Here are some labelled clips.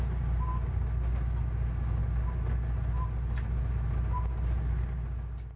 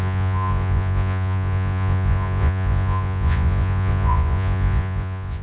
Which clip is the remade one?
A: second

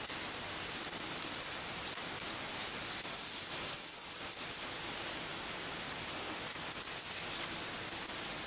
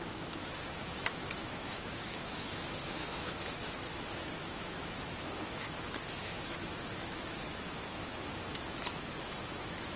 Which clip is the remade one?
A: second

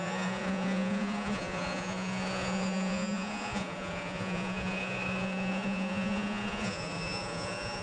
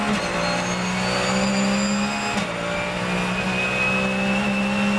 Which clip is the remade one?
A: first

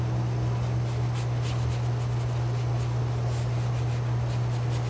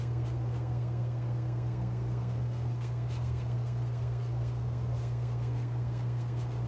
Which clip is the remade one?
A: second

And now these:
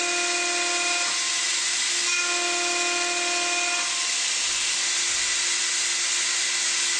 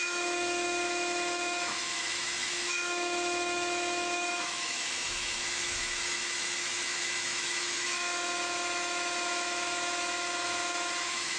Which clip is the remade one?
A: second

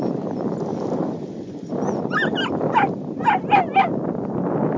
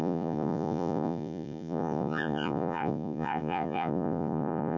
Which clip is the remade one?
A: second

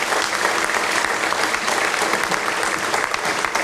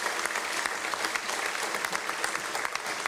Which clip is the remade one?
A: first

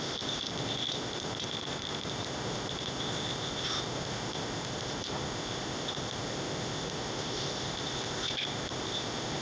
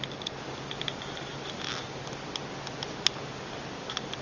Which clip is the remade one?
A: first